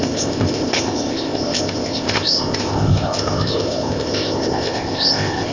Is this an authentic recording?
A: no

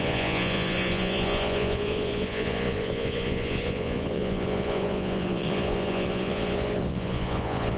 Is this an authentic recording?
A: no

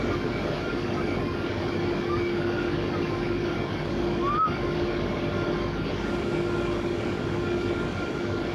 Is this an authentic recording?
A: no